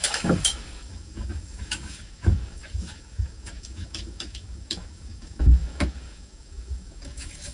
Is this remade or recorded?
remade